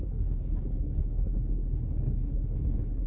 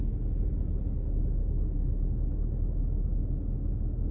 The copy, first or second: first